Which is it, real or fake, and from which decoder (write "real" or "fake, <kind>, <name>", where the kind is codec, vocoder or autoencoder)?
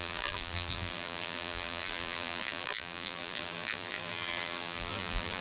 fake, vocoder, BigVGAN v2